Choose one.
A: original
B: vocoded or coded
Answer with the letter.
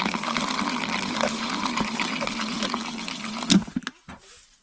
A